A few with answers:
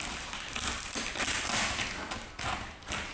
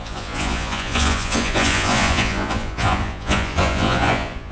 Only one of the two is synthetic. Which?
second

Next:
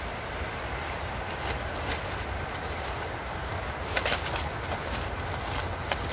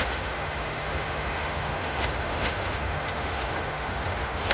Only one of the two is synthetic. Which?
second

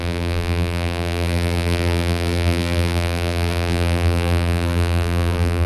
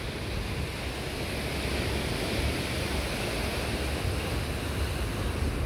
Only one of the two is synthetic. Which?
first